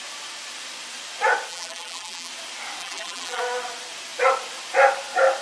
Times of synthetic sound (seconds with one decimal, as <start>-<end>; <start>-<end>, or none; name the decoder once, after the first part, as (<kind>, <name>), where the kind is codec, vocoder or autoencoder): 1.5-2.3 (vocoder, BigVGAN v2); 2.8-3.4